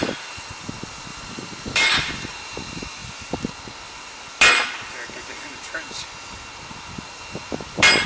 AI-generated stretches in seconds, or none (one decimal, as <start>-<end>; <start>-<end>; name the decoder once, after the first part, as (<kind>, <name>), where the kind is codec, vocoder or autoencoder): 1.1-2.1 (vocoder, BigVGAN v2)